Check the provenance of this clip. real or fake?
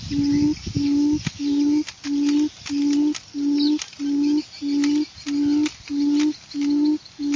real